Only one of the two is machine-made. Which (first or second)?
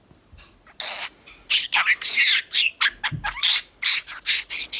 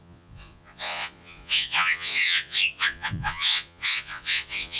second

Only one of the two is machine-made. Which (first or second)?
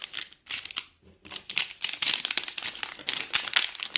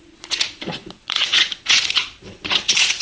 second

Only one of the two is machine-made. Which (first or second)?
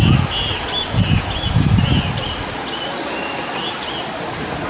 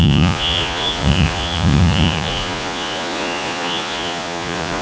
second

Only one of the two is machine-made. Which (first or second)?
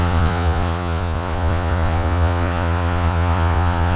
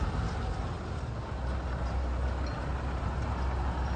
first